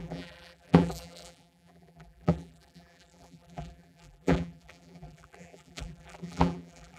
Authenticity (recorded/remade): remade